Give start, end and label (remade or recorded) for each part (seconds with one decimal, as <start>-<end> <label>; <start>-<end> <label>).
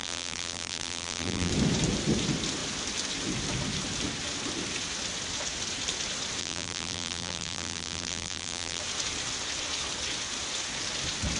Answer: 0.0-1.5 remade; 1.5-6.4 recorded; 6.4-8.8 remade; 8.8-11.4 recorded